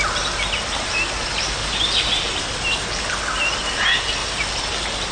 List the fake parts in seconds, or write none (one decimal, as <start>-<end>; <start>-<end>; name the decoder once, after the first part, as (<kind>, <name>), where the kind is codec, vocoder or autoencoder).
1.6-2.4 (vocoder, BigVGAN v2)